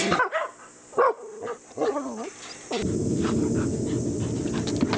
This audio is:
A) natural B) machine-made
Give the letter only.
A